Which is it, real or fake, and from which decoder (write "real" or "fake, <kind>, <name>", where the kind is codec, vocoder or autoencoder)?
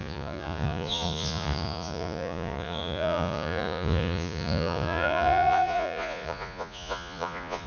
fake, vocoder, Vocos